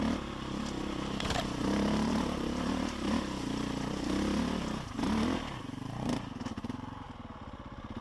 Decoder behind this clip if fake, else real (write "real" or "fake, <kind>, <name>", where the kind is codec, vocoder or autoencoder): real